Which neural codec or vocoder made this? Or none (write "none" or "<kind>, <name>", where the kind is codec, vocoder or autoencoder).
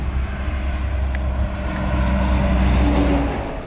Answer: none